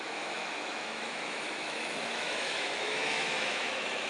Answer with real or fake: fake